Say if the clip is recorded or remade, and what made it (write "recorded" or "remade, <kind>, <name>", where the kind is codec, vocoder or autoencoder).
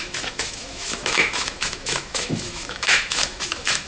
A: remade, autoencoder, DAC-VAE